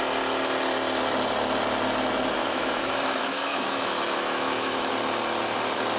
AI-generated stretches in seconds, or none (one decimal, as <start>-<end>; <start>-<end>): 2.4-4.9